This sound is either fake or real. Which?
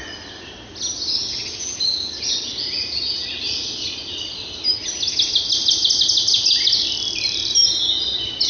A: real